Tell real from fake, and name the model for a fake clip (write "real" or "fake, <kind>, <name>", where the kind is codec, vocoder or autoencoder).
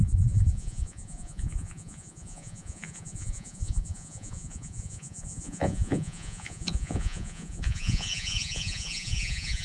fake, vocoder, Vocos